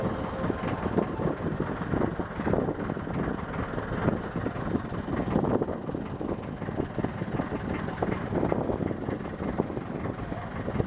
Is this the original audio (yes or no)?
yes